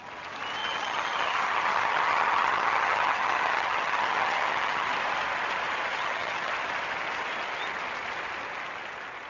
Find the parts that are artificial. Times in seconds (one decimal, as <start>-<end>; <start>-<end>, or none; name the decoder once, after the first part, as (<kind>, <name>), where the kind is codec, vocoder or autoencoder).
0.6-4.9 (vocoder, HiFi-GAN); 5.9-6.5

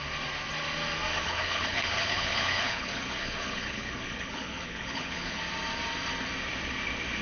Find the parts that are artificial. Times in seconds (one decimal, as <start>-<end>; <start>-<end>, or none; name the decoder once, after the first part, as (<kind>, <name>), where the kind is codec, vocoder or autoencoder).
1.1-5.4 (codec, HILCodec)